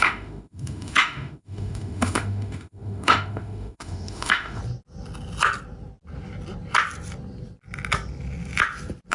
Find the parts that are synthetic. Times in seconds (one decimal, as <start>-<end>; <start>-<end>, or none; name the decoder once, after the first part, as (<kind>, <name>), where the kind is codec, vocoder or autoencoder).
0.0-4.6 (autoencoder, DAC-VAE)